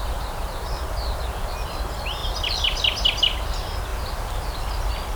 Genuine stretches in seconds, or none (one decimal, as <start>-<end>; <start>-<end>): 0.0-5.2